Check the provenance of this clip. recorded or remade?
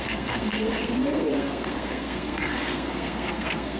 remade